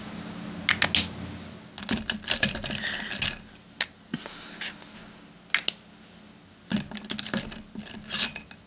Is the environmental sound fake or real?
real